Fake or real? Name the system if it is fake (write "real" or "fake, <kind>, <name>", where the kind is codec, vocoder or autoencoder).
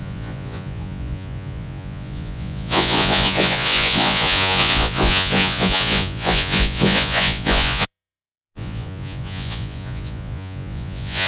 fake, vocoder, Vocos